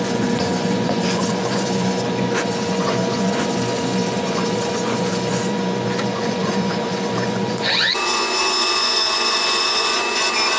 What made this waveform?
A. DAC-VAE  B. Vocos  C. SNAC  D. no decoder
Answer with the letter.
B